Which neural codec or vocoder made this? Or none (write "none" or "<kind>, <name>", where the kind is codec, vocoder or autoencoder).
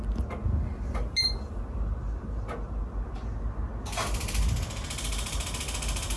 none